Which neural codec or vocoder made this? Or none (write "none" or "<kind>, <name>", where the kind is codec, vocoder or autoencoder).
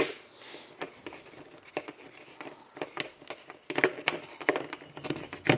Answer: none